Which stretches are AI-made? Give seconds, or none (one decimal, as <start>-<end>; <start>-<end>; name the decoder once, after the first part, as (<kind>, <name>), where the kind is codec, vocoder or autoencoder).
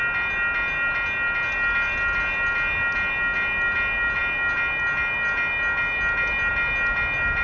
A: none